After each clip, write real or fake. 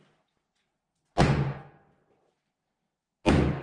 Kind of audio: real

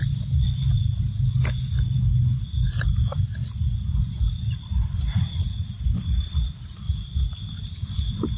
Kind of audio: real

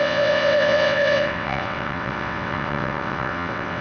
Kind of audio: fake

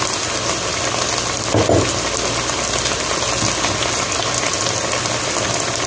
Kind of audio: real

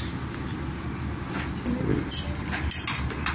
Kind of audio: real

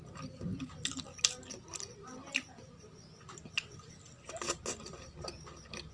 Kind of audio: real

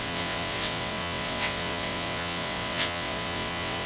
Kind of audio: fake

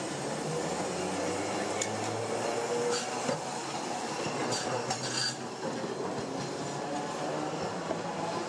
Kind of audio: real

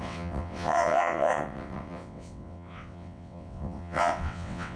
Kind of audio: fake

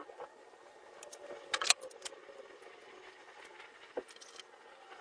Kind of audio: real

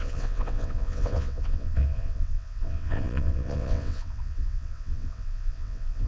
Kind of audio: fake